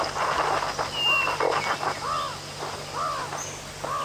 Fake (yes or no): no